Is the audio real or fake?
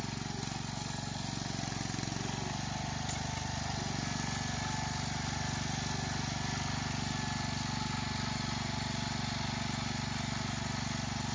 real